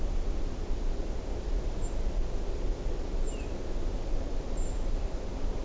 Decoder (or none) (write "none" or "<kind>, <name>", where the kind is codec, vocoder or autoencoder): none